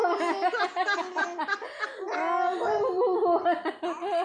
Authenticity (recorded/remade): recorded